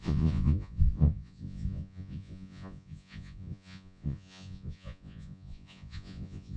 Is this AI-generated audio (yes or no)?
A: yes